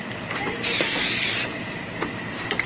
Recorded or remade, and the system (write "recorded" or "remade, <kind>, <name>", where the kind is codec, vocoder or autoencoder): recorded